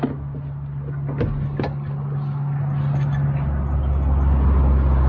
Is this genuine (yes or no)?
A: yes